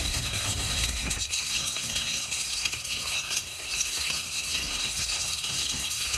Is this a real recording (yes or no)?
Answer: no